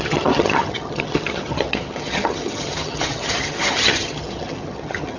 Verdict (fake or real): fake